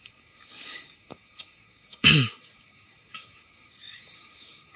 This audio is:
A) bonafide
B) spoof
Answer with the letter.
B